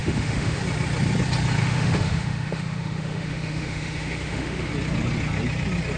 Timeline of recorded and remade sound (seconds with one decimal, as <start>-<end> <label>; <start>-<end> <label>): 0.0-0.6 remade; 0.6-1.6 recorded; 1.6-4.7 remade; 4.7-6.0 recorded